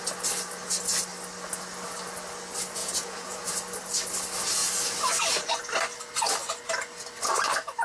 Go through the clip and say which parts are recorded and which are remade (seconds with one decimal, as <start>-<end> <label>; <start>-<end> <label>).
0.0-2.8 recorded; 2.8-3.5 remade; 3.5-7.8 recorded